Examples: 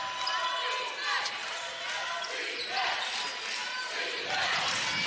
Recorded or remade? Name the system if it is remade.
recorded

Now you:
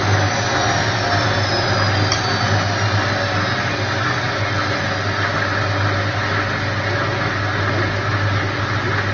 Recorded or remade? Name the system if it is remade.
recorded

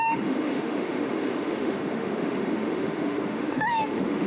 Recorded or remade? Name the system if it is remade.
remade, autoencoder, DAC-VAE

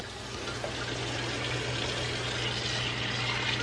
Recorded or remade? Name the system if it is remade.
recorded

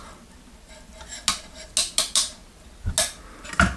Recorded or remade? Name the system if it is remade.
recorded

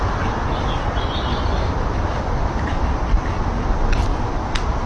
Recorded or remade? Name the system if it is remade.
recorded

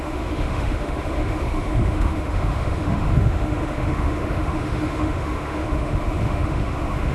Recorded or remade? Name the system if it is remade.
remade, autoencoder, DAC-VAE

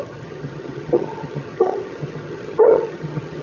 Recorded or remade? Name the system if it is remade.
remade, vocoder, HiFi-GAN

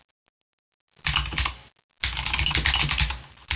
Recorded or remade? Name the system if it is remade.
recorded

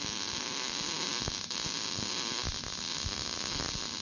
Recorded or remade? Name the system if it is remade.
recorded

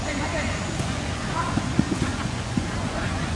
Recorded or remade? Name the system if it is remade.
remade, vocoder, Vocos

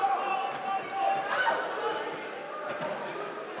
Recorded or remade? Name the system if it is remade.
recorded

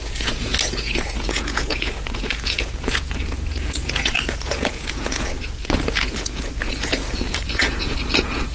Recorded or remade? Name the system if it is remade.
remade, vocoder, Vocos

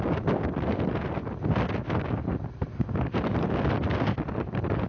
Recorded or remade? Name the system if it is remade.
recorded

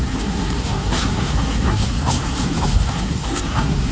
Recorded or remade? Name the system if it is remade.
remade, codec, SNAC